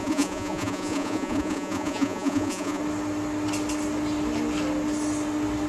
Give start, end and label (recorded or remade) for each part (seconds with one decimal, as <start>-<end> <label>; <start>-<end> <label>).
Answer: 0.0-2.8 remade; 2.8-5.7 recorded